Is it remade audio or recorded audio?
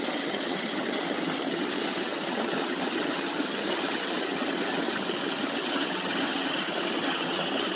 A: remade